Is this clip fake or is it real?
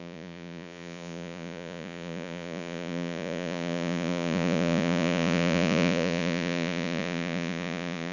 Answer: fake